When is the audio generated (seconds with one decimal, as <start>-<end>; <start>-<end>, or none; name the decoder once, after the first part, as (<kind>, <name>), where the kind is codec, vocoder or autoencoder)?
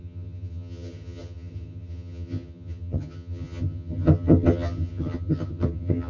0.0-6.1 (vocoder, HiFi-GAN)